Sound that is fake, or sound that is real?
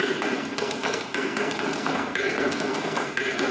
fake